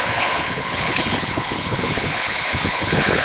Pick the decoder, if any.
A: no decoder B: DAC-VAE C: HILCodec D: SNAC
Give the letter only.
C